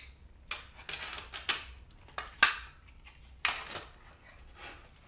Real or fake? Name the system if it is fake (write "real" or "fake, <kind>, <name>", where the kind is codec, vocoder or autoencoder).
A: real